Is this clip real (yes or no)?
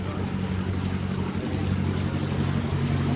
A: yes